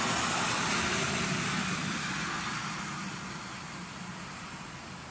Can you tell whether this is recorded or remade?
recorded